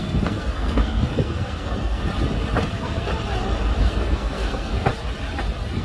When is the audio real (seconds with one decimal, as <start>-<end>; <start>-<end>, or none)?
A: 2.0-2.6; 3.1-3.8; 4.9-5.8